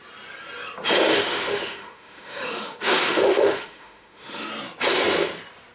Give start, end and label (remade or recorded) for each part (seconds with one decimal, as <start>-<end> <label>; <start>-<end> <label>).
0.0-1.1 recorded; 1.1-4.5 remade; 4.5-5.7 recorded